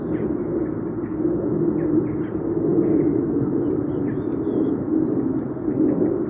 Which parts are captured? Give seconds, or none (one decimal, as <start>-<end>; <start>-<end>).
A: 0.0-6.3